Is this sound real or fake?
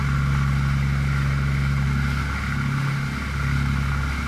real